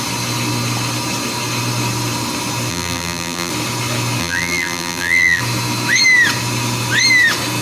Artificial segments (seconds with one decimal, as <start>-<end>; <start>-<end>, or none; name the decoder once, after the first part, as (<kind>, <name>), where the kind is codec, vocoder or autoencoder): 2.7-3.5 (vocoder, BigVGAN v2); 4.2-5.4